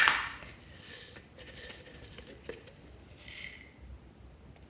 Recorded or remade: recorded